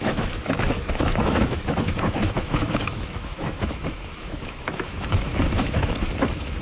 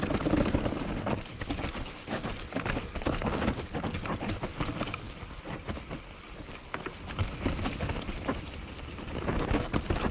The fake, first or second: first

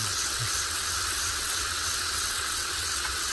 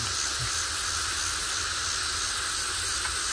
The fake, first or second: first